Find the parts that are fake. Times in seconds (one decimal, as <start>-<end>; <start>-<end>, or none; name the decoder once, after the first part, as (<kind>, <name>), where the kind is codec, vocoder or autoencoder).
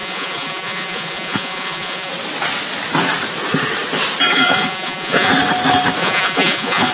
0.0-2.1 (vocoder, Vocos); 4.3-5.3; 6.0-6.9